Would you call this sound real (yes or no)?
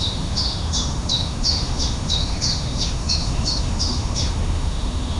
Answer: no